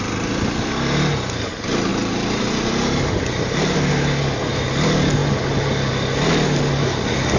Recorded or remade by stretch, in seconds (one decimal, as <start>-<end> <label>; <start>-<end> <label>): 0.0-1.9 recorded; 1.9-3.9 remade; 3.9-7.4 recorded